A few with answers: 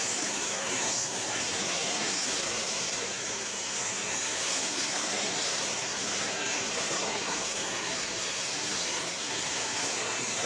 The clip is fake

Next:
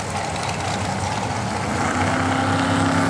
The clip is real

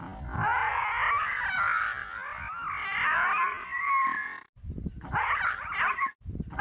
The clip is real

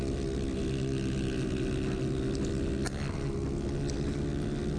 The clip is real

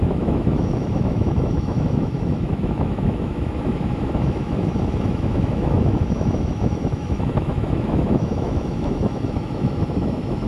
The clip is fake